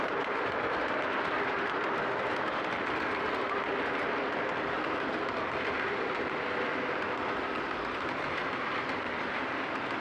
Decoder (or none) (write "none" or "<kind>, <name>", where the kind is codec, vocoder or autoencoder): none